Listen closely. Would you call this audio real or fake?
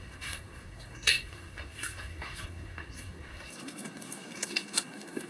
fake